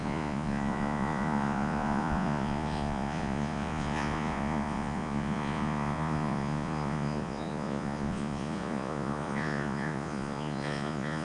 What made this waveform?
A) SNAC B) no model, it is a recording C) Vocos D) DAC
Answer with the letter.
C